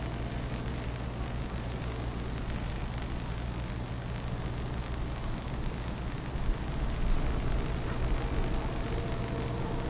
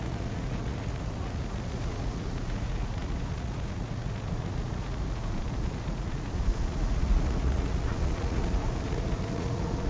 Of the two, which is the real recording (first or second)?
first